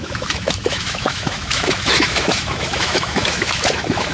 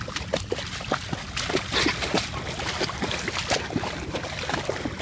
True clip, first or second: second